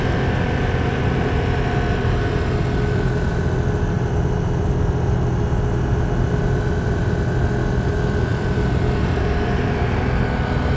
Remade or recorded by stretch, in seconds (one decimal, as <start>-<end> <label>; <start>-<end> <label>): 0.0-8.3 recorded; 8.3-9.2 remade; 9.2-10.8 recorded